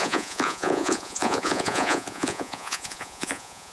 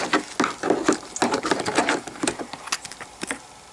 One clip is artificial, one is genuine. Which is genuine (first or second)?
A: second